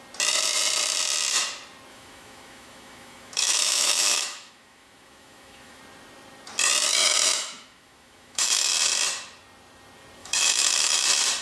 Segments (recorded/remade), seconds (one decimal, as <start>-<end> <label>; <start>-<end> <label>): 0.0-1.9 recorded; 1.9-5.8 remade; 5.8-7.0 recorded; 7.0-8.7 remade; 8.7-10.2 recorded; 10.2-11.0 remade; 11.0-11.4 recorded